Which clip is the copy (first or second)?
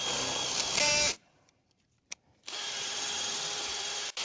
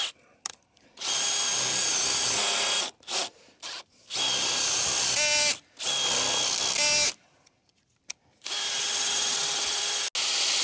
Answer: first